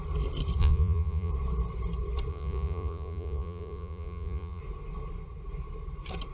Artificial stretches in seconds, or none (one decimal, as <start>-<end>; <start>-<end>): 0.6-1.3; 2.3-4.6